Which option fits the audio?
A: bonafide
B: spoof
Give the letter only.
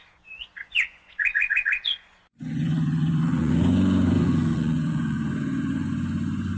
B